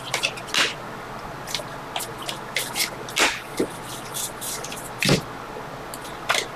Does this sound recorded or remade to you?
recorded